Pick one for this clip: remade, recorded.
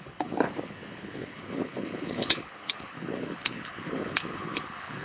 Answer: remade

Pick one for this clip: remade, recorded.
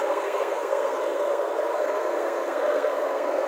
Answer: remade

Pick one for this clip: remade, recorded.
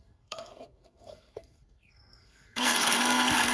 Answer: remade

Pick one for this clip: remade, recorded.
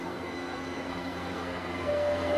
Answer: remade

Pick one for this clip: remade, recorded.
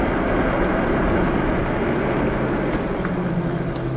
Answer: recorded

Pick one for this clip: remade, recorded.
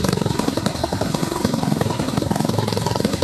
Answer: remade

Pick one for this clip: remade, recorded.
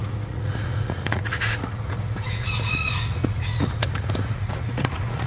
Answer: remade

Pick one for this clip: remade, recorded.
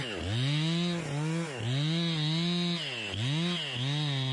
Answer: recorded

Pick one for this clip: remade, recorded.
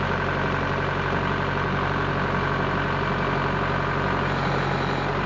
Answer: recorded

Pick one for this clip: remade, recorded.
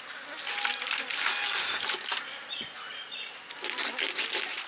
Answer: recorded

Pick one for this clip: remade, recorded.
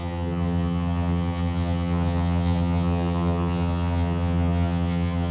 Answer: remade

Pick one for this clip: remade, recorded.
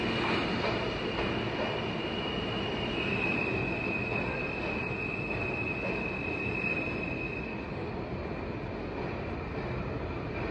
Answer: recorded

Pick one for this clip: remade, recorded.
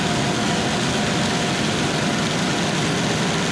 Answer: recorded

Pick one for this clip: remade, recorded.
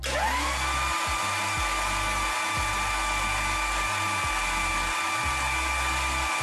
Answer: recorded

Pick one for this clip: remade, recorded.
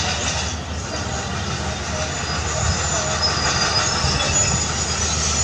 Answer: recorded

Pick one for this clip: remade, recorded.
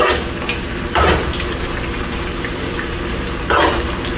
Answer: recorded